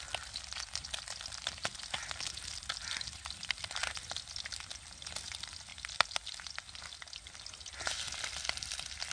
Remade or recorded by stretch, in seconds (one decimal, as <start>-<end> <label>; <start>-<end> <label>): 0.0-9.1 recorded

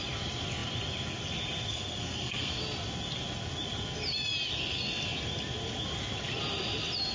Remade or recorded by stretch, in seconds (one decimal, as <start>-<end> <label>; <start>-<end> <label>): 0.0-1.7 recorded; 1.7-2.6 remade; 2.6-7.1 recorded